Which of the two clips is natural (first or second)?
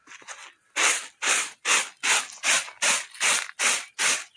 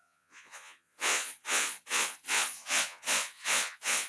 first